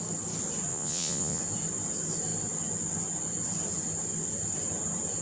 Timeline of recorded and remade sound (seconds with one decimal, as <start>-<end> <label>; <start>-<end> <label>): 0.0-0.7 recorded; 0.7-1.4 remade; 1.4-5.2 recorded